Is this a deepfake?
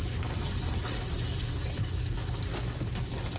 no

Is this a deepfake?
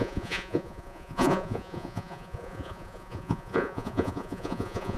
yes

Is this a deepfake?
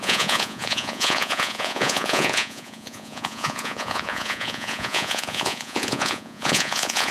yes